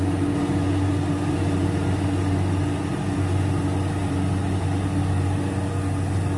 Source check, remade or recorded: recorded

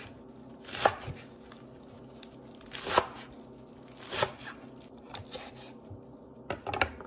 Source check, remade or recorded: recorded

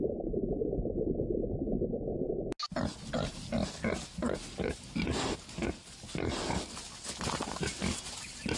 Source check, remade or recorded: recorded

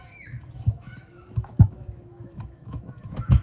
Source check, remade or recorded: remade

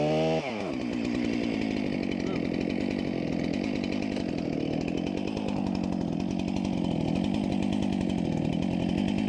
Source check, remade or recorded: recorded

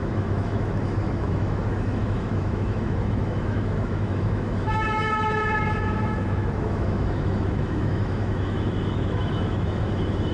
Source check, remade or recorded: remade